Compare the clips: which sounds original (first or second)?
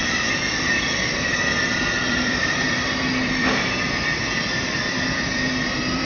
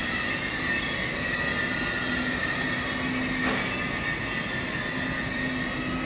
second